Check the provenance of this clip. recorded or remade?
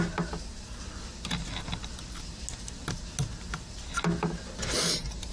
recorded